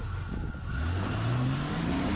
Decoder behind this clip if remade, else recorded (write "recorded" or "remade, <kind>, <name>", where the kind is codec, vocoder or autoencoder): recorded